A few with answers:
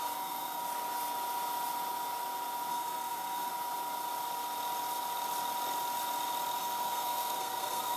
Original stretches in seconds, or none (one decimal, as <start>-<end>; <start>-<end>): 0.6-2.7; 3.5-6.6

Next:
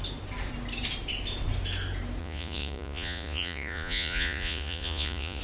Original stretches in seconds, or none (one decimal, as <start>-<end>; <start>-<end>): 0.0-2.2

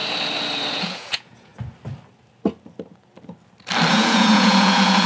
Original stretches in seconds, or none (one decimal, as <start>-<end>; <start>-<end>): 0.0-0.7; 1.5-3.9

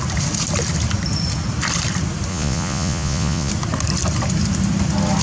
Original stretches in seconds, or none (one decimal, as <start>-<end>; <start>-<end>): 0.0-2.3; 3.5-5.2

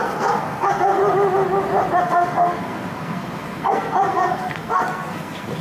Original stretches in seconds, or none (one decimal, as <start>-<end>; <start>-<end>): 1.0-2.0

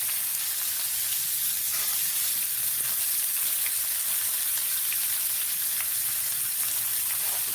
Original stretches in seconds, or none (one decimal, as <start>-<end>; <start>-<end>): 0.0-7.5